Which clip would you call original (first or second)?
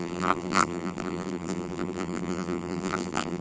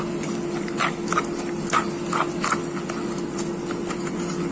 second